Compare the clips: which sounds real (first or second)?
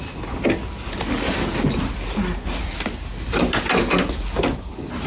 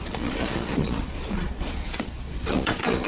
first